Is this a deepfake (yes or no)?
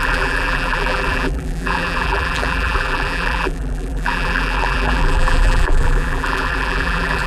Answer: yes